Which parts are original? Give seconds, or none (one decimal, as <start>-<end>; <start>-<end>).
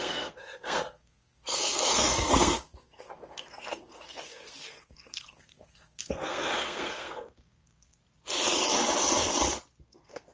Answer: 8.0-9.8